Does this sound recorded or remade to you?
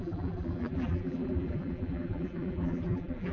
remade